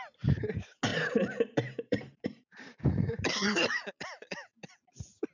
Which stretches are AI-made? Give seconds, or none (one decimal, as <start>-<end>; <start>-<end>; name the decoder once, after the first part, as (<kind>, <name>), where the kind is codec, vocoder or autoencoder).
0.9-3.9 (vocoder, BigVGAN v2)